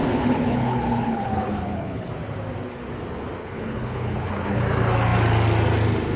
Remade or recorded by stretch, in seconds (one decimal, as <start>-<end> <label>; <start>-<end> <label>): 0.0-2.1 remade; 2.1-3.4 recorded; 3.4-4.6 remade; 4.6-6.2 recorded

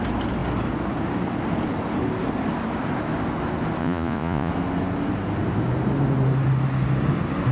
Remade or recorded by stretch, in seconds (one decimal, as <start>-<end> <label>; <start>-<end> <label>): 0.0-3.8 recorded; 3.8-4.5 remade; 4.5-7.5 recorded

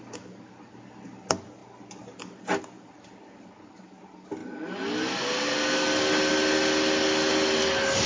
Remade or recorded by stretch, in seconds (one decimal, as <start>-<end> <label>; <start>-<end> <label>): 0.0-8.1 recorded